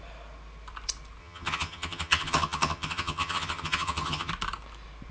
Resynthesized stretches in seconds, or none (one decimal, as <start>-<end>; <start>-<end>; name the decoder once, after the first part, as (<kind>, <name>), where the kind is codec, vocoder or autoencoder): 1.2-4.3 (vocoder, HiFi-GAN)